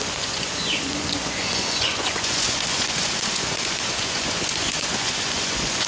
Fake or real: fake